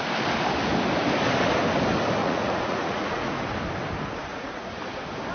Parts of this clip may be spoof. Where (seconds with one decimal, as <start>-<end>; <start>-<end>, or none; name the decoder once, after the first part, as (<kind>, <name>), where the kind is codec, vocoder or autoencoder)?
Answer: 2.2-3.4 (vocoder, Vocos); 4.3-4.8